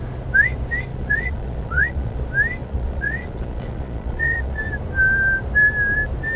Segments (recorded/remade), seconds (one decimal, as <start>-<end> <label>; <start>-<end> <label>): 0.0-0.9 recorded; 0.9-2.2 remade; 2.2-2.6 recorded; 2.6-4.6 remade; 4.6-6.4 recorded